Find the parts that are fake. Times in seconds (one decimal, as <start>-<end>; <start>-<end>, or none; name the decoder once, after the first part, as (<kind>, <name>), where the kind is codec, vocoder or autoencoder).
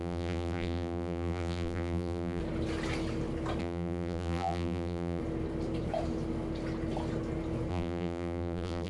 0.0-2.4 (vocoder, BigVGAN v2); 3.6-5.2; 7.7-8.9